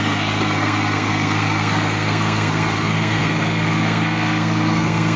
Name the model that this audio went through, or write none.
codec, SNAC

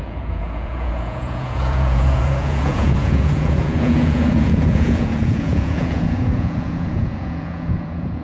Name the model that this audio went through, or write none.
vocoder, Vocos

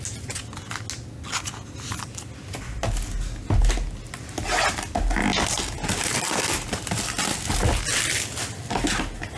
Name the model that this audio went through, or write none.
none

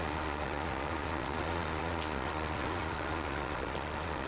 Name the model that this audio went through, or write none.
vocoder, Vocos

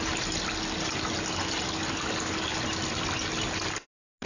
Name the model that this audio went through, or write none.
none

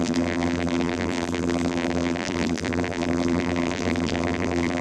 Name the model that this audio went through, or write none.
vocoder, BigVGAN v2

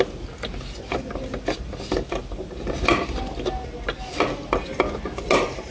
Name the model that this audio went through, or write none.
none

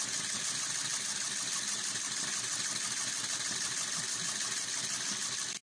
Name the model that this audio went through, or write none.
none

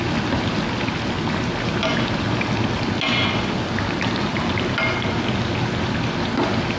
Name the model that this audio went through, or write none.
none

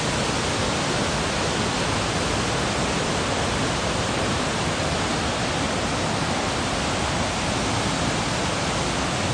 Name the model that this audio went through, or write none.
none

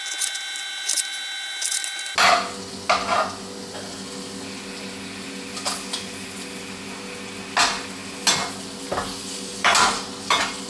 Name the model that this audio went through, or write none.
none